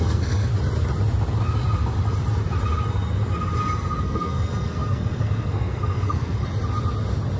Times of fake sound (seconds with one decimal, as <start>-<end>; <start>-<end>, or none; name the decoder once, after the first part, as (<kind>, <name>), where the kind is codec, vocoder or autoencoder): 0.0-0.5 (codec, SNAC); 4.0-6.4